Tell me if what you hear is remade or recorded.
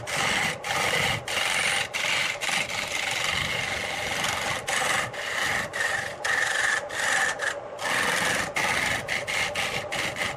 recorded